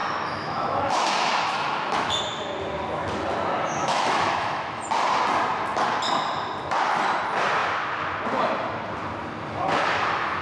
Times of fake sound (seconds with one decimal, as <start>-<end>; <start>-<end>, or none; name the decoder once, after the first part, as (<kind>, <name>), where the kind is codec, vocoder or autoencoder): 0.0-2.2 (autoencoder, DAC-VAE); 3.8-4.8

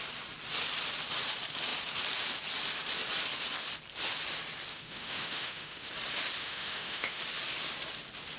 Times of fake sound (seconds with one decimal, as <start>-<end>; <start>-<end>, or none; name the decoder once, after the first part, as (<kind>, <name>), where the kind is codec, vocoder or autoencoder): 4.7-5.9 (autoencoder, DAC-VAE); 6.4-7.2